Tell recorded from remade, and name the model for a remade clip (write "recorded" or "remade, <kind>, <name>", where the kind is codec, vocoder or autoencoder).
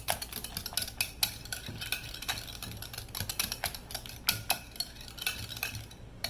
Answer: recorded